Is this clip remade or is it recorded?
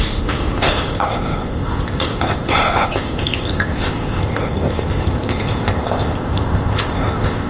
remade